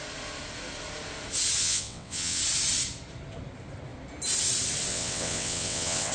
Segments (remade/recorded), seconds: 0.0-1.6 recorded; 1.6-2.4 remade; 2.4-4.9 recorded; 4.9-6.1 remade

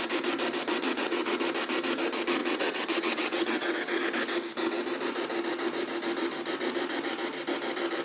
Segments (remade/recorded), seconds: 0.0-0.7 recorded; 0.7-1.3 remade; 1.3-2.4 recorded; 2.4-4.0 remade; 4.0-8.0 recorded

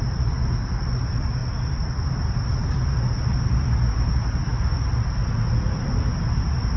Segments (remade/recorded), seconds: 0.0-6.8 recorded

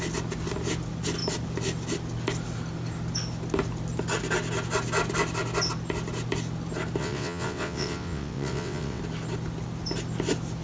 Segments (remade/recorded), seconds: 0.0-7.0 recorded; 7.0-9.0 remade; 9.0-10.6 recorded